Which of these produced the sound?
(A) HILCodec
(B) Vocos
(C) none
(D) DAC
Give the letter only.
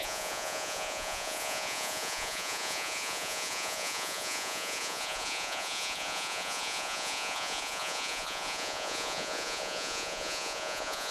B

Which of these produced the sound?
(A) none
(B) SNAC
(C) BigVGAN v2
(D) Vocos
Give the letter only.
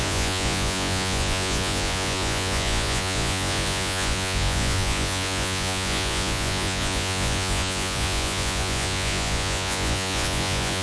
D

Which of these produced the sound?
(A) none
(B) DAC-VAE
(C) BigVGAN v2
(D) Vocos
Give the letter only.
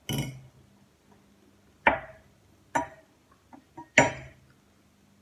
A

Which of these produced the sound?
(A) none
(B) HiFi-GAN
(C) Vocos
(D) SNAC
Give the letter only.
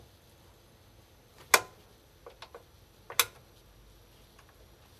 A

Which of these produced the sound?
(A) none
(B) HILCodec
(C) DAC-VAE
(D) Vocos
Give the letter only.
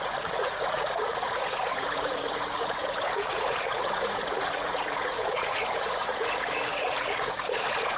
D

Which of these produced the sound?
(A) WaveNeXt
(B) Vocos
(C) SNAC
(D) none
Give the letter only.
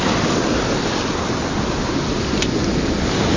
D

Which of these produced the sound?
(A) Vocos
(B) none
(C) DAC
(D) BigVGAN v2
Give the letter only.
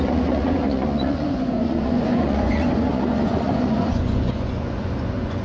A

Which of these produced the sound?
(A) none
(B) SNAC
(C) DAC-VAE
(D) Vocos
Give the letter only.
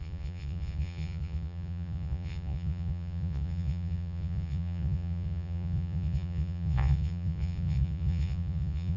D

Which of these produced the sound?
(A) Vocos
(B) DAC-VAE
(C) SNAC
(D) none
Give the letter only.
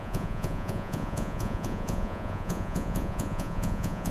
A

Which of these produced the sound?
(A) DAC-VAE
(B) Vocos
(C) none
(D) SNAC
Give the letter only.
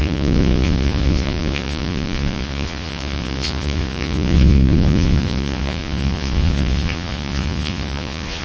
B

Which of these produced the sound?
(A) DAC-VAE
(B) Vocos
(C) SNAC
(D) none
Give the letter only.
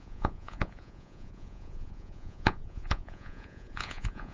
B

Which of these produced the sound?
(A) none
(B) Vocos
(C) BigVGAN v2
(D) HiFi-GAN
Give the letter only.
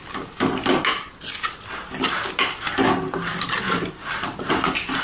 A